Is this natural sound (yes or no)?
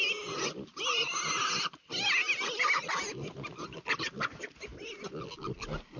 yes